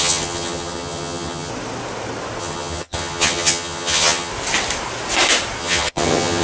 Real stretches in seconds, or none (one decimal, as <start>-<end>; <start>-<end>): 1.5-2.4; 4.3-5.6